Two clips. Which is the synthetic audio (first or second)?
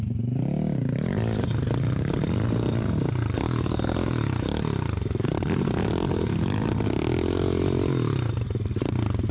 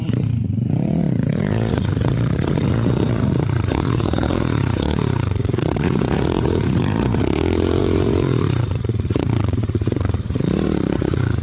second